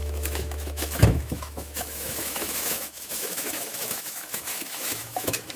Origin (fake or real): fake